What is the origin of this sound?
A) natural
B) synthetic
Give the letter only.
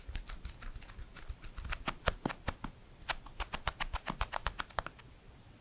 B